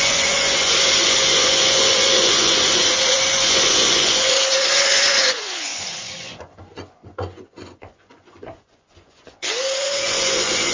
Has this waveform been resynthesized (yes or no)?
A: yes